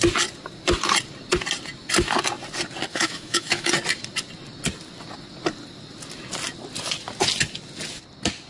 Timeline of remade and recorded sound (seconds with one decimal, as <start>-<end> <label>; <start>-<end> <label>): 0.0-2.9 recorded; 2.9-3.7 remade; 3.7-8.5 recorded